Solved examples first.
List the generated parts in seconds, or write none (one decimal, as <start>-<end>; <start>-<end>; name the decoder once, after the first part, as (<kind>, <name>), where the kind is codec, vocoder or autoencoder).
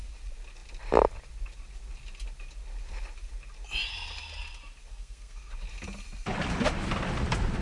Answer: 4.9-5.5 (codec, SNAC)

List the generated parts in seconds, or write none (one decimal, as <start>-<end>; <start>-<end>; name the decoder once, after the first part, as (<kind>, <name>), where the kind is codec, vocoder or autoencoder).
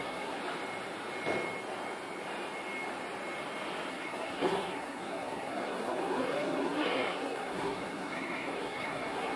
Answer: 0.0-0.4 (codec, SNAC); 3.9-9.4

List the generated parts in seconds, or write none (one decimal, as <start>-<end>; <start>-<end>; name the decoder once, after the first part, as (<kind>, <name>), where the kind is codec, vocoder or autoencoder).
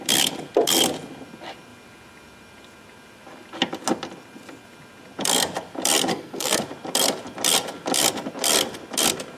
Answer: 6.1-6.6 (codec, SNAC)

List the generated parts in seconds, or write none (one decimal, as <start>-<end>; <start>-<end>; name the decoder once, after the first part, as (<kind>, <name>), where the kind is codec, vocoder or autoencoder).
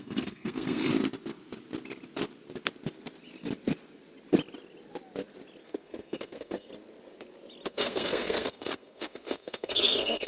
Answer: 0.0-0.9 (codec, SNAC); 5.6-6.7; 7.7-10.3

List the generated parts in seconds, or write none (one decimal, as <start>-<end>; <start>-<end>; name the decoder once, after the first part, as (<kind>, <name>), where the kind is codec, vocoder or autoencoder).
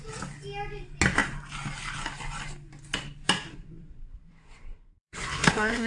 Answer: 3.5-5.9 (codec, SNAC)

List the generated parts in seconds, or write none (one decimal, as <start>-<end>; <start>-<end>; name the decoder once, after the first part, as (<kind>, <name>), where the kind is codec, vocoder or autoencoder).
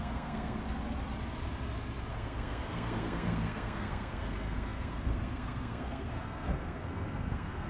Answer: 0.0-0.6 (codec, SNAC); 2.1-7.7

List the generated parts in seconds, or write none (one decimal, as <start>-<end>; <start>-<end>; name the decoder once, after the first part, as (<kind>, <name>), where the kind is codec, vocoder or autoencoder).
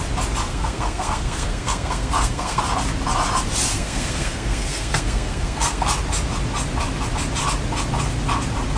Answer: 0.5-2.6 (codec, SNAC); 3.7-5.9